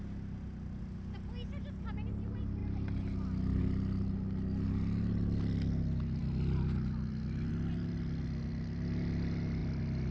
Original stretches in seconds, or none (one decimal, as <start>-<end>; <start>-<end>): 0.0-10.1